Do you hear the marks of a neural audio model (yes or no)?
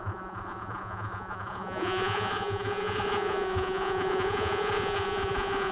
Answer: yes